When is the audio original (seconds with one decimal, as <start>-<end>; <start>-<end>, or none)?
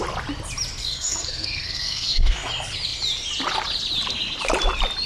0.0-0.8; 2.5-5.1